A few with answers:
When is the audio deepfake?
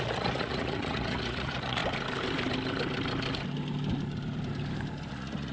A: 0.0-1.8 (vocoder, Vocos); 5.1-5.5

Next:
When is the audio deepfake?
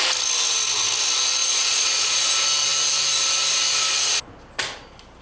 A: 1.4-2.3 (vocoder, Vocos)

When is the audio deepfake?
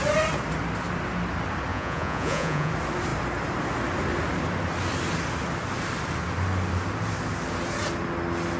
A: 1.7-2.7 (vocoder, Vocos)